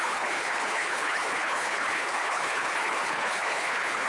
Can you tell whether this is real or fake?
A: fake